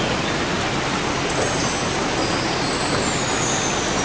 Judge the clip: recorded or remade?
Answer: recorded